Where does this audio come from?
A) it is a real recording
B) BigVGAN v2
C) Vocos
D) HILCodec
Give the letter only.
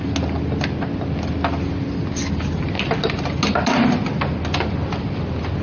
A